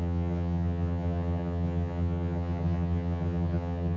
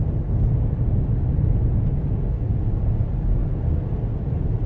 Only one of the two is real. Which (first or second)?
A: second